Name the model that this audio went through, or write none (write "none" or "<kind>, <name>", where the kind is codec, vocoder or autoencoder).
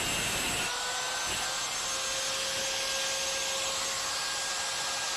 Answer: none